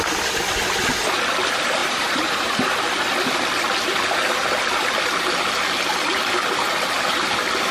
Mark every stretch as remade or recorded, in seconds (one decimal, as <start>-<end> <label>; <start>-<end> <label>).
0.0-1.8 recorded; 1.8-2.5 remade; 2.5-7.7 recorded